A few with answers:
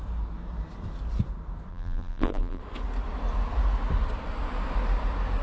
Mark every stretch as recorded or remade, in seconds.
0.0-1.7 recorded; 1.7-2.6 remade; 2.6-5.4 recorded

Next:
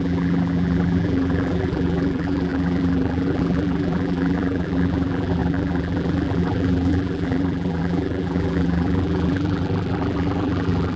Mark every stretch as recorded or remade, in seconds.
0.0-11.0 remade

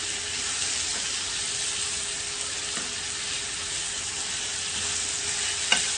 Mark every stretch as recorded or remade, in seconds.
0.0-6.0 recorded

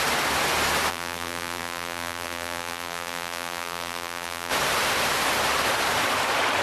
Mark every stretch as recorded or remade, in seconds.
0.0-0.9 recorded; 0.9-4.5 remade; 4.5-6.6 recorded

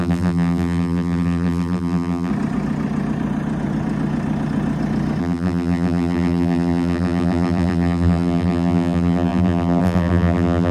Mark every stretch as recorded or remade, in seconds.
0.0-2.3 remade; 2.3-5.2 recorded; 5.2-10.7 remade

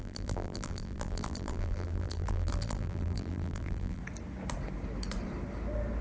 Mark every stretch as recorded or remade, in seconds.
0.0-4.0 remade; 4.0-6.0 recorded

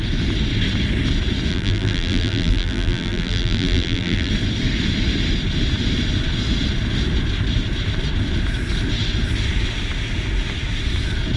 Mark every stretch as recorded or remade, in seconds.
0.0-1.5 recorded; 1.5-4.3 remade; 4.3-11.4 recorded